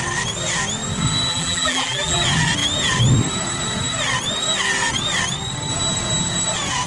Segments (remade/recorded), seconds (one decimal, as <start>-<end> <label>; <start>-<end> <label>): 0.0-1.3 recorded; 1.3-2.2 remade; 2.2-6.9 recorded